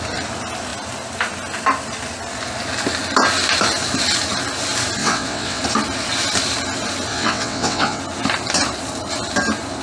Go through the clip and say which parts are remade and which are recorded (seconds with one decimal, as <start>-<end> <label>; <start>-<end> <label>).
0.0-5.0 recorded; 5.0-5.6 remade; 5.6-7.1 recorded; 7.1-8.0 remade; 8.0-9.8 recorded